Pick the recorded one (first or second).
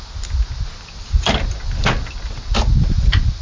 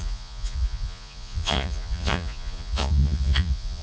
first